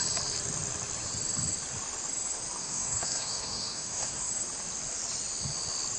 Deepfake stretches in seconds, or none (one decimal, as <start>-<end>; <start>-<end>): 2.6-4.3